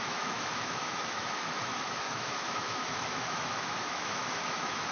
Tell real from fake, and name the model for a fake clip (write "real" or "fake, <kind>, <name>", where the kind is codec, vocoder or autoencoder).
fake, autoencoder, DAC-VAE